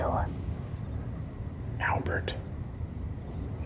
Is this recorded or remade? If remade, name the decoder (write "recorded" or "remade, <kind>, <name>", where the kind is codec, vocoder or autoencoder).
recorded